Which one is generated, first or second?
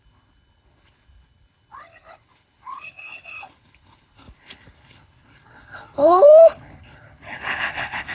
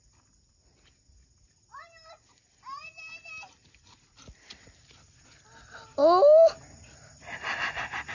first